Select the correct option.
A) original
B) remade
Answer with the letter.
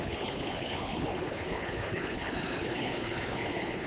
B